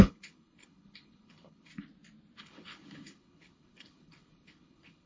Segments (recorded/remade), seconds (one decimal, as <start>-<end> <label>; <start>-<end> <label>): 0.0-1.7 remade; 1.7-2.4 recorded; 2.4-5.1 remade

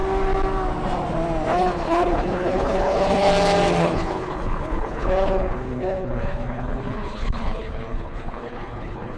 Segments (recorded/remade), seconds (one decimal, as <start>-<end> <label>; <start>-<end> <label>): 0.0-1.5 recorded; 1.5-3.3 remade; 3.3-3.8 recorded; 3.8-9.2 remade

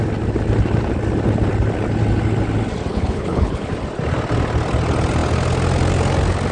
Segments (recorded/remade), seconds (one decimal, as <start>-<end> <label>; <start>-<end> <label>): 0.0-2.9 recorded; 2.9-3.7 remade; 3.7-6.5 recorded

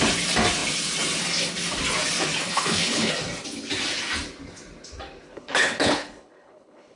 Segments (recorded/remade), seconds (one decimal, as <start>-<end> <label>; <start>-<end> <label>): 0.0-2.4 recorded; 2.4-3.1 remade; 3.1-5.3 recorded; 5.3-7.0 remade